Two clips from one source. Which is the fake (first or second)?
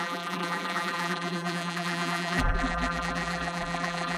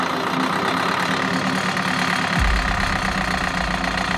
first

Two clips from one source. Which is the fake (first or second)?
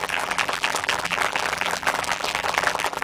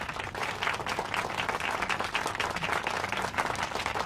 first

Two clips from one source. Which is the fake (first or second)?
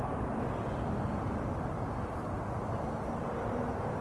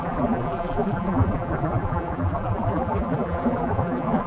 second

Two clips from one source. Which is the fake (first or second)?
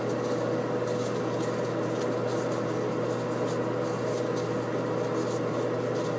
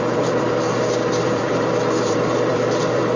second